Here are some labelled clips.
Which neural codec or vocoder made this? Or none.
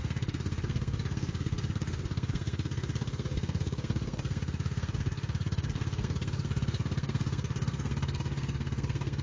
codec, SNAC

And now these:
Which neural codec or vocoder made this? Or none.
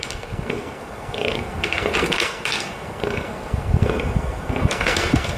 codec, SNAC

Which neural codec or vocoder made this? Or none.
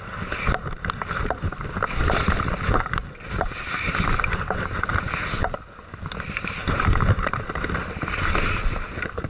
none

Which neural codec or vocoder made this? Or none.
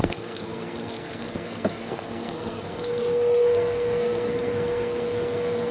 codec, SNAC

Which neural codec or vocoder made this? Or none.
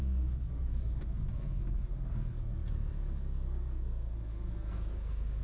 codec, SNAC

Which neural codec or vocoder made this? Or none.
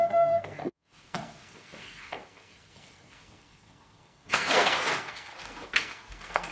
codec, SNAC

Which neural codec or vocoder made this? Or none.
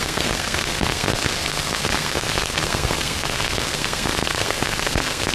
codec, SNAC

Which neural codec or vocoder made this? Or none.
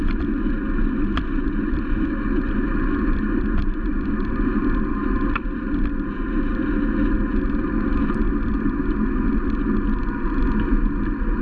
none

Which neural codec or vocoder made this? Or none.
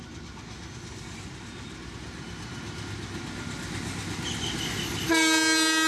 none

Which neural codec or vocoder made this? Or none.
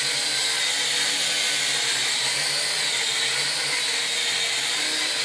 none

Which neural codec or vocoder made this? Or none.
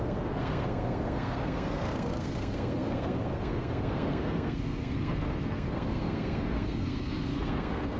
codec, SNAC